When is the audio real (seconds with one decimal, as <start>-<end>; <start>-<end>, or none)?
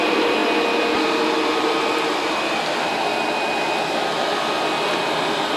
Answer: 0.4-1.5; 3.1-5.6